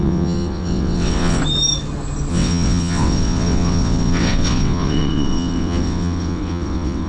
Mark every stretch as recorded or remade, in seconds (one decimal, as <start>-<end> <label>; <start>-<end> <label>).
0.0-1.4 remade; 1.4-2.3 recorded; 2.3-7.1 remade